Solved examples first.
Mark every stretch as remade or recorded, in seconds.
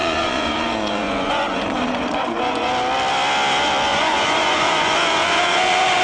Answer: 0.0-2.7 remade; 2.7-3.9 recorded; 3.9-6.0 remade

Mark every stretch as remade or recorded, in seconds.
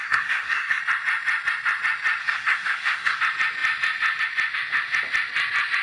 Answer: 0.0-0.8 remade; 0.8-2.2 recorded; 2.2-3.2 remade; 3.2-5.8 recorded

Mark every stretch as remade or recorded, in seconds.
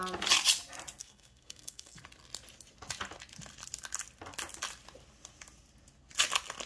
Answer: 0.0-1.0 recorded; 1.0-2.0 remade; 2.0-6.7 recorded